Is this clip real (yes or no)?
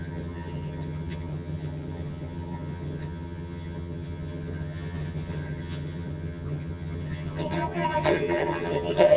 no